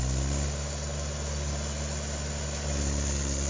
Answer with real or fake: real